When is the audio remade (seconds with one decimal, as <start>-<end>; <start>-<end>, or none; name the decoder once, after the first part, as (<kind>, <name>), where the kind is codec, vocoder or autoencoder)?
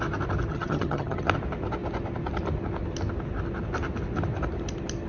0.5-1.2 (vocoder, HiFi-GAN)